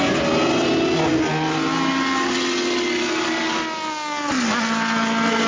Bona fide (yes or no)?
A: yes